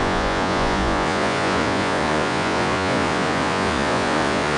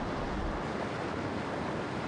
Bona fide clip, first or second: second